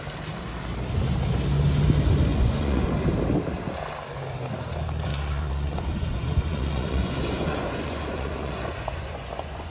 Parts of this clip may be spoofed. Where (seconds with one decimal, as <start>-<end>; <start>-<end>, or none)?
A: 2.3-2.9; 5.1-9.7